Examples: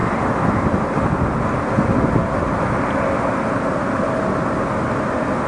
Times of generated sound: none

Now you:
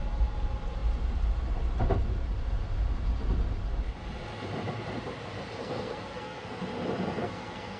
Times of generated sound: 5.6-6.6 (codec, SNAC); 7.2-7.8

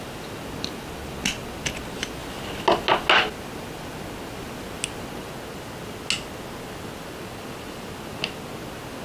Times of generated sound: none

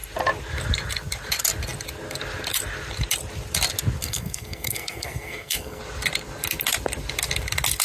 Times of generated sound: 4.0-5.8 (codec, SNAC)

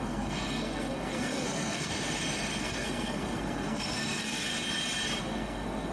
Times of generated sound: 0.0-1.9 (codec, SNAC); 2.6-4.5; 5.2-5.9

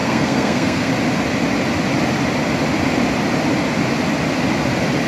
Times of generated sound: 0.0-0.9 (codec, SNAC)